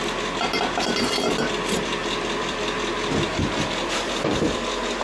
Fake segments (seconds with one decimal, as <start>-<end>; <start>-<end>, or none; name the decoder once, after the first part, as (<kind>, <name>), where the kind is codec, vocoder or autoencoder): 2.0-5.0 (vocoder, BigVGAN v2)